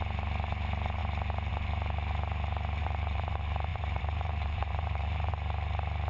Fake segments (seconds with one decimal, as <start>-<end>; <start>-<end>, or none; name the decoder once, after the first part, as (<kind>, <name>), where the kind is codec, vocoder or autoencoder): 2.8-3.3 (vocoder, BigVGAN v2); 3.7-5.3